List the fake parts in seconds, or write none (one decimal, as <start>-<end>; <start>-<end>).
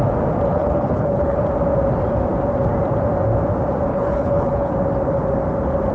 0.5-1.4; 3.9-4.7